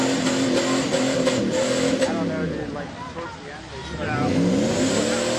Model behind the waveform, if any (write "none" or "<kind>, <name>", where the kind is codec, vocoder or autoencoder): none